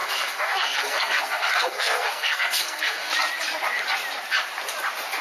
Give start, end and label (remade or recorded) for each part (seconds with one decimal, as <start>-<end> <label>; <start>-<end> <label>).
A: 0.0-3.1 remade; 3.1-5.2 recorded

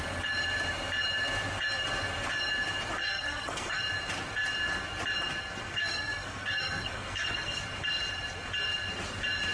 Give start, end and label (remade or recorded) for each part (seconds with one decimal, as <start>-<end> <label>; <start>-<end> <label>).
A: 0.0-3.0 recorded; 3.0-3.8 remade; 3.8-5.6 recorded; 5.6-7.6 remade; 7.6-9.5 recorded

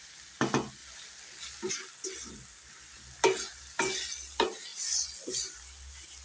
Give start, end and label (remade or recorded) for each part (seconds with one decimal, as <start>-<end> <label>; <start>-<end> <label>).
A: 0.0-6.2 recorded

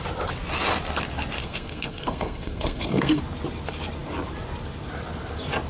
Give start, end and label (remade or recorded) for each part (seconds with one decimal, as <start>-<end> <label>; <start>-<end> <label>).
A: 0.0-1.4 recorded; 1.4-3.2 remade; 3.2-5.7 recorded

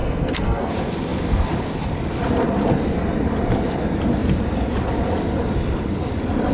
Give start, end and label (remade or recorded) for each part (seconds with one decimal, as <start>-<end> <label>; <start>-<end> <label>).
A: 0.0-0.7 remade; 0.7-6.5 recorded

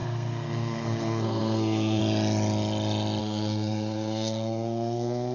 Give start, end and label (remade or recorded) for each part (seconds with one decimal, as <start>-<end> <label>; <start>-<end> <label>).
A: 0.0-2.0 remade; 2.0-3.2 recorded; 3.2-5.3 remade